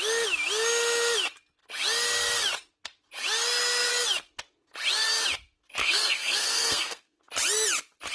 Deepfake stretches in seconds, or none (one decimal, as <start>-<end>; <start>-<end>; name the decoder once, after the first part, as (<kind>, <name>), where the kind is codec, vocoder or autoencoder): 5.8-7.2 (codec, SNAC)